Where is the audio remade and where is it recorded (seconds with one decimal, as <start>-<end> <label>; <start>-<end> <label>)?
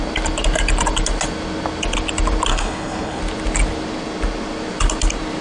0.0-2.5 recorded; 2.5-3.2 remade; 3.2-5.4 recorded